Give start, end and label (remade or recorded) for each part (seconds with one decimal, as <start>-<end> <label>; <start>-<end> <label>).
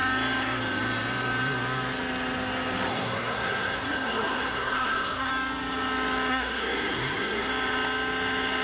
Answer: 0.0-2.9 recorded; 2.9-5.3 remade; 5.3-6.3 recorded; 6.3-7.5 remade; 7.5-8.6 recorded